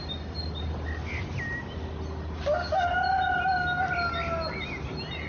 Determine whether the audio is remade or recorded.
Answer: recorded